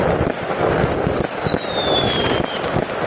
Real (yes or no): yes